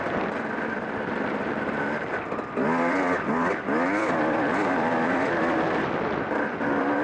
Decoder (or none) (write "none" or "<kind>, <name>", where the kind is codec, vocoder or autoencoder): vocoder, BigVGAN v2